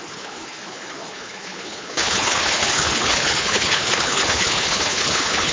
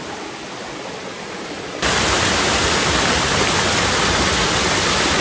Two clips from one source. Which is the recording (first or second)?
second